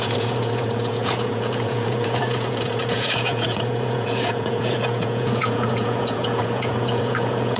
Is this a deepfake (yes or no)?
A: yes